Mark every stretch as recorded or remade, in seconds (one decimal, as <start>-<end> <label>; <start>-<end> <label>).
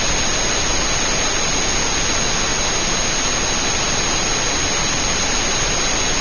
0.0-6.2 recorded